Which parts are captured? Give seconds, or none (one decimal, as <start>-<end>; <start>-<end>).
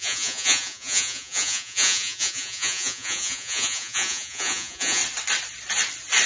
5.0-6.3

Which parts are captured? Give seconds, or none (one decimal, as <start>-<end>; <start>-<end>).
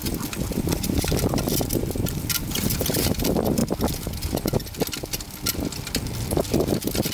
3.6-7.1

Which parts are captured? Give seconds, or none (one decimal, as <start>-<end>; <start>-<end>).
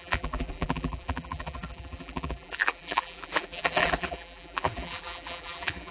none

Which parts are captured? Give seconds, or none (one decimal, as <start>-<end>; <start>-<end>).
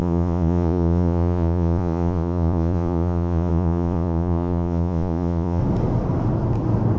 5.6-7.0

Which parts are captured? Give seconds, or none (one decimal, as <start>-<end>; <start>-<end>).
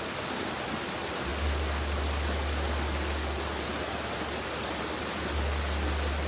0.0-6.3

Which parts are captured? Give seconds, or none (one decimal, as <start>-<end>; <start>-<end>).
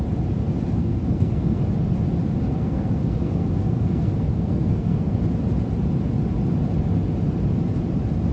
0.0-0.8; 1.6-2.5; 5.2-8.3